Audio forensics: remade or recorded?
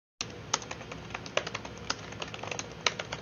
recorded